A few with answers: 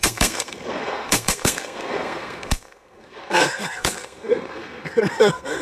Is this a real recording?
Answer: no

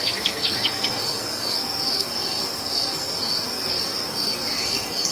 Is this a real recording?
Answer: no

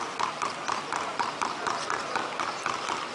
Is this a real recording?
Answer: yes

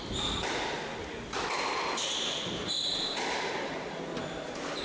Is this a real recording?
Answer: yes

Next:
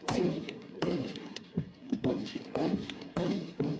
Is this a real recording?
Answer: no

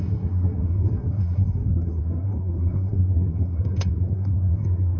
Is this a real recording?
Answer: no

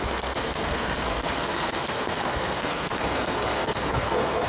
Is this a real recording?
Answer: no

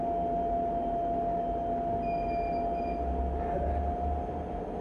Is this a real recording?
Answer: yes